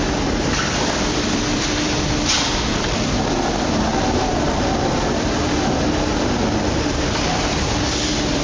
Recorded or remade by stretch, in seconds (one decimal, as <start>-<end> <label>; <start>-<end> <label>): 0.0-2.7 recorded; 2.7-3.5 remade; 3.5-3.9 recorded; 3.9-5.0 remade; 5.0-8.4 recorded